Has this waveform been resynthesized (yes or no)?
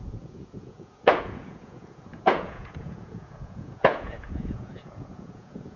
yes